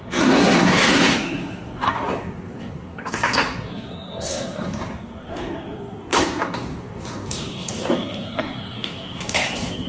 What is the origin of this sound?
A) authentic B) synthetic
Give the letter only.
B